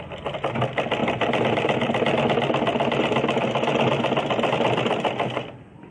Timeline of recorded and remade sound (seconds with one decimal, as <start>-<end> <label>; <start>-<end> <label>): 0.0-5.9 recorded